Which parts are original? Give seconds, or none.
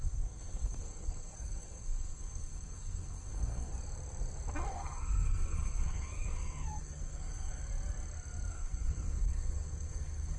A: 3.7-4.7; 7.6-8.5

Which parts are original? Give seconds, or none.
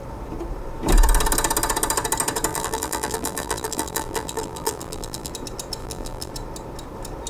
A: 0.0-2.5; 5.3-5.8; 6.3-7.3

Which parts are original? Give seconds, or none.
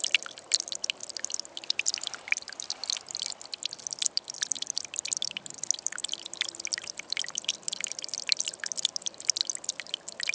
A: 0.0-10.3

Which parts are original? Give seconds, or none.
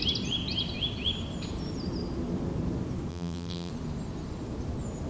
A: 0.0-3.1; 3.7-5.1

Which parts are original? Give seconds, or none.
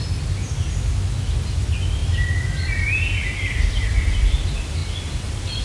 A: 0.0-5.6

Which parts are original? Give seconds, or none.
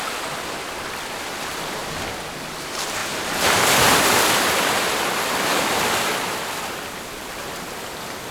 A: none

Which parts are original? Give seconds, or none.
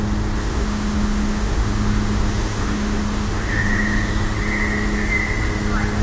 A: 0.0-0.5; 4.1-6.0